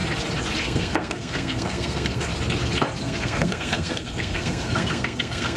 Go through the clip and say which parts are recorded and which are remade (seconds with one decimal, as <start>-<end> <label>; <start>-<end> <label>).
0.0-0.6 recorded; 0.6-2.3 remade; 2.3-3.0 recorded; 3.0-5.6 remade